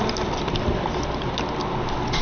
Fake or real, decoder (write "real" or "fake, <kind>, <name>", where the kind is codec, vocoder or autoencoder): real